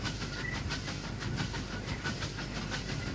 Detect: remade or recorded recorded